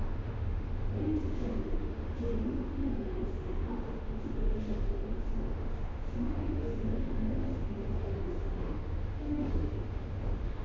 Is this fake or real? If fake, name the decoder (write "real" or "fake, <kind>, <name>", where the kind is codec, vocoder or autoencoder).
fake, autoencoder, DAC-VAE